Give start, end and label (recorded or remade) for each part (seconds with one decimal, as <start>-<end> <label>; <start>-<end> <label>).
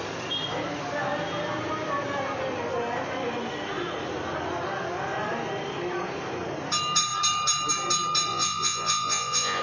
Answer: 0.0-8.3 recorded; 8.3-9.6 remade